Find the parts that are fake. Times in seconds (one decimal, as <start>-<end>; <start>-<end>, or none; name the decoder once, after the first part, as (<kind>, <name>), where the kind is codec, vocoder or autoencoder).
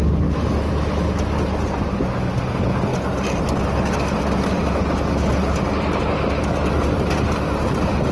none